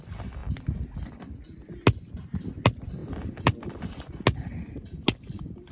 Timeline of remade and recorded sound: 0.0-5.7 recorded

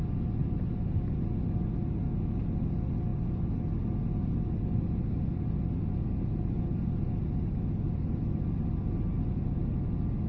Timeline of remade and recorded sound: 0.0-10.3 recorded

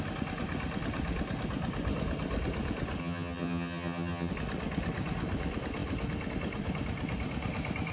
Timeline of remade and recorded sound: 0.0-3.0 recorded; 3.0-4.3 remade; 4.3-7.9 recorded

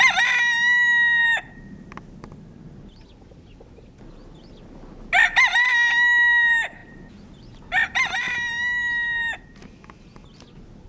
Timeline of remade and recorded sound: 0.0-10.9 recorded

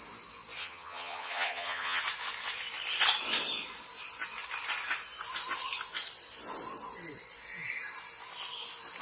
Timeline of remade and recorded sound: 0.0-0.6 recorded; 0.6-2.0 remade; 2.0-9.0 recorded

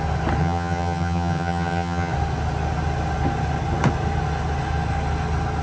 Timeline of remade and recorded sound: 0.0-0.4 recorded; 0.4-2.1 remade; 2.1-5.6 recorded